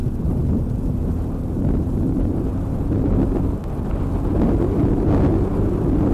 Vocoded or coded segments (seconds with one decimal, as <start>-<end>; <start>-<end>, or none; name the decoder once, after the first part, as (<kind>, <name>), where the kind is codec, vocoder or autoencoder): 0.0-3.1 (vocoder, BigVGAN v2)